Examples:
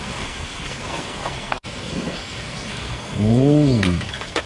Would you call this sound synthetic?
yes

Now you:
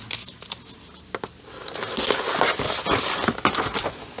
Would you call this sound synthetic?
no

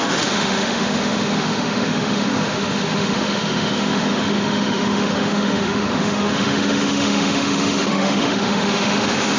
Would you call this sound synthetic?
yes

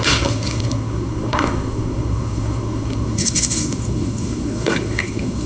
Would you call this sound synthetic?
yes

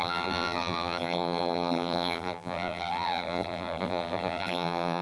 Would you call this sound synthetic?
yes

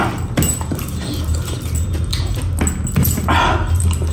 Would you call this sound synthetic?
no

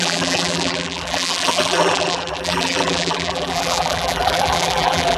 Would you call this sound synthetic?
yes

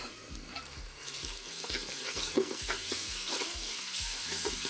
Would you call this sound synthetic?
yes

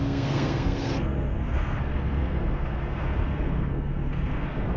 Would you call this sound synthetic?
yes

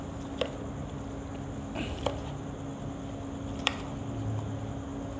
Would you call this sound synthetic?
no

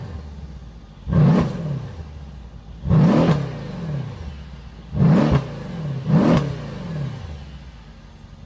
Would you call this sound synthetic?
no